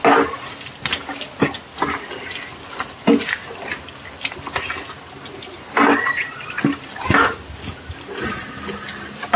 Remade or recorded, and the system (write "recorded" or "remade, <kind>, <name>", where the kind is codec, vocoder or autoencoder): recorded